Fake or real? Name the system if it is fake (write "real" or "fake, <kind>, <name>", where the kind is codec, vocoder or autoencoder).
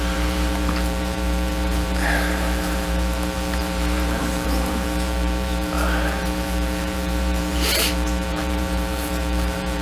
fake, vocoder, BigVGAN v2